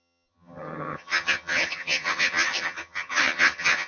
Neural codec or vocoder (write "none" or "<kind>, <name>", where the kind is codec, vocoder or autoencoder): vocoder, HiFi-GAN